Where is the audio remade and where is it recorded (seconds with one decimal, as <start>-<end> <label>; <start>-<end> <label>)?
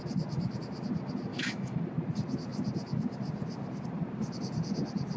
0.0-1.3 recorded; 1.3-1.8 remade; 1.8-5.2 recorded